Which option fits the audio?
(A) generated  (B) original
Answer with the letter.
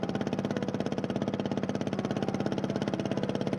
A